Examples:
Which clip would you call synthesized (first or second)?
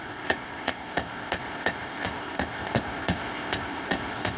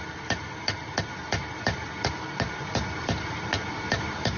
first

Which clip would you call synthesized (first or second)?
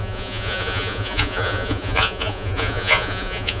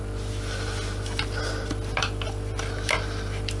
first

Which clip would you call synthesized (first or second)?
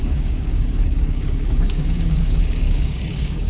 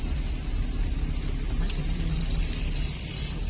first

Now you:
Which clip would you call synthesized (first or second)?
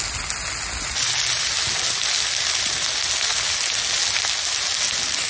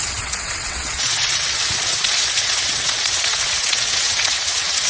second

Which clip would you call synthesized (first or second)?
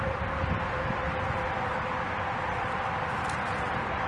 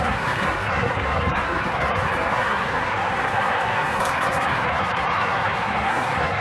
second